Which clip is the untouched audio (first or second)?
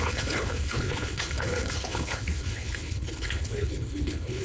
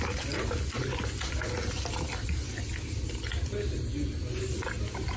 second